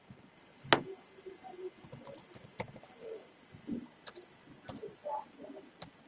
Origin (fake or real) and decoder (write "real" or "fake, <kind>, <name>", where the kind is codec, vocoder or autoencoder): real